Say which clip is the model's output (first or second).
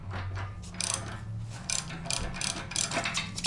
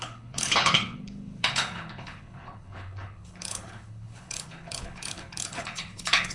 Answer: second